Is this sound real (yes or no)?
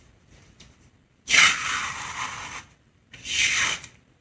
yes